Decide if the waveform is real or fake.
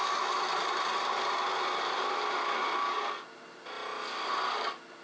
real